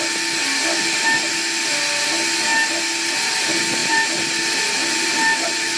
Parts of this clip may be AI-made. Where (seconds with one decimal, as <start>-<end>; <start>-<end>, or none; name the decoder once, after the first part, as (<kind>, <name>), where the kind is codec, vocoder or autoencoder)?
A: none